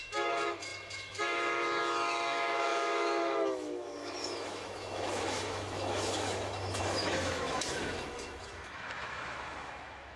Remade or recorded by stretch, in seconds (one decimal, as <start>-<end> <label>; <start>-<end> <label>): 0.0-10.2 remade